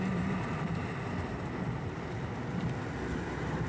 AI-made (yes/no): no